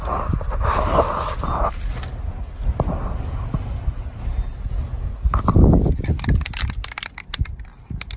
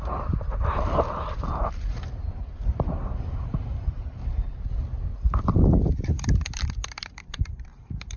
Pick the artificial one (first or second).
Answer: second